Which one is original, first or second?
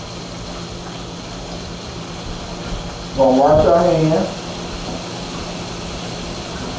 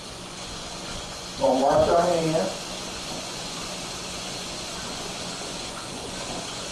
first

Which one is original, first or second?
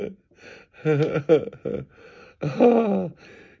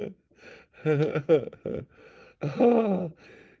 first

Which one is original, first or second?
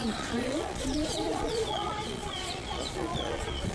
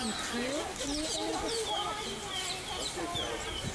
second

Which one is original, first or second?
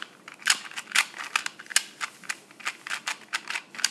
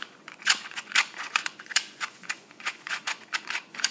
first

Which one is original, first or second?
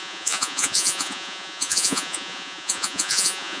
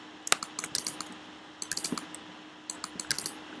second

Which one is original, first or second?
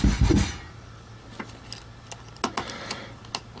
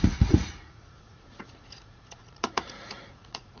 first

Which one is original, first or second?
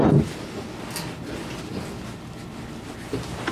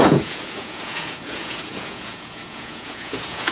first